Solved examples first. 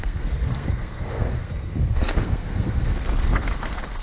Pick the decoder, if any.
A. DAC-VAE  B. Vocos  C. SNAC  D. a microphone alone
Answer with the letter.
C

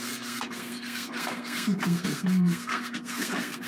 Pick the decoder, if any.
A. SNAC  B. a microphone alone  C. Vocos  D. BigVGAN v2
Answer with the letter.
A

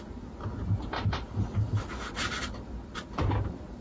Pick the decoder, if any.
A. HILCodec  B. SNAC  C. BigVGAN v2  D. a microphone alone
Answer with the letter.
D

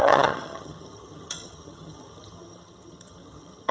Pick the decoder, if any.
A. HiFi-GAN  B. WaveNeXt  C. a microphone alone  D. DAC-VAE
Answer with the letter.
A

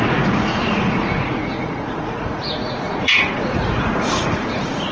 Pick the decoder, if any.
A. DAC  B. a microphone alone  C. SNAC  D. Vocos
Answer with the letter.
D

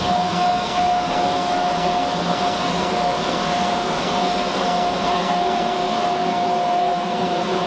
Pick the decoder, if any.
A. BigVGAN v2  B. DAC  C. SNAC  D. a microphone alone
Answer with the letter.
C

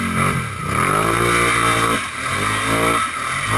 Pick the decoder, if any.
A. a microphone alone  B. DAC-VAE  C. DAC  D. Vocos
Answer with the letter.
A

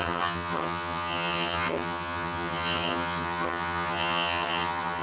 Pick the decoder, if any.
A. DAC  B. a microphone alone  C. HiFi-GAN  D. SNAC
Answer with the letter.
C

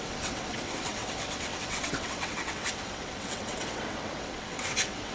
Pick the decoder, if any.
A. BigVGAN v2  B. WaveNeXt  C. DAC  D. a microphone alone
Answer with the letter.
B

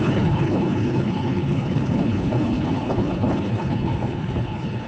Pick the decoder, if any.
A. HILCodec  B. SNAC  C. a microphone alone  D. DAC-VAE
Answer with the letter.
A